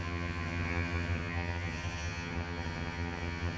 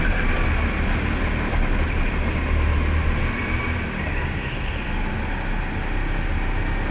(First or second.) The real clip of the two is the second